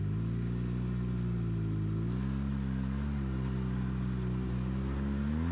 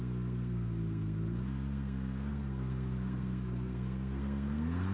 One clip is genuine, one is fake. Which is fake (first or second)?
second